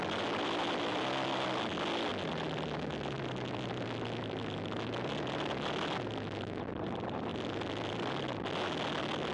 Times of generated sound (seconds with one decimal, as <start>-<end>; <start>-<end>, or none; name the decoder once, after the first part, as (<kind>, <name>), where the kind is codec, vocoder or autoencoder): none